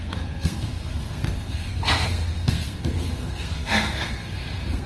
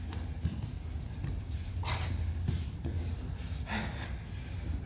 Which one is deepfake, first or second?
first